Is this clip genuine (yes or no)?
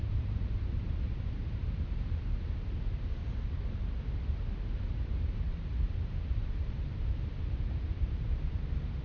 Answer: no